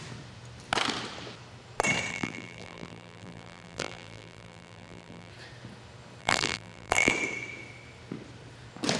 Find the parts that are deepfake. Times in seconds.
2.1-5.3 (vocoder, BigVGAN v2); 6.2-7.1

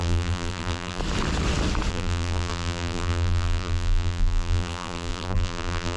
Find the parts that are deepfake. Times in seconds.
0.0-1.0 (vocoder, BigVGAN v2); 1.9-6.0

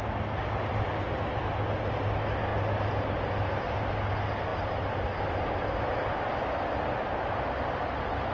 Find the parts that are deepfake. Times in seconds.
none

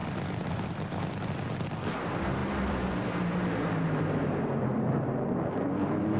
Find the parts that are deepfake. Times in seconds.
0.0-0.6 (vocoder, BigVGAN v2); 2.4-6.2

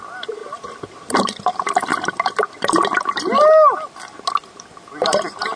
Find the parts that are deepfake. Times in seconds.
0.0-0.4 (vocoder, BigVGAN v2); 1.1-1.9; 4.5-5.6

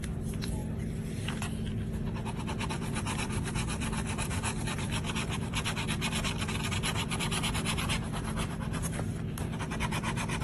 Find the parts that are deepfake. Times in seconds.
0.0-0.6 (vocoder, BigVGAN v2); 1.2-10.4

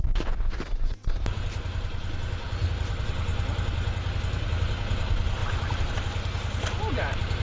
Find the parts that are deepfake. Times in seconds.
5.4-5.9 (vocoder, BigVGAN v2)

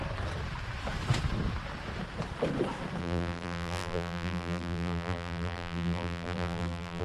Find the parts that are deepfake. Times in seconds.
3.0-7.0 (vocoder, BigVGAN v2)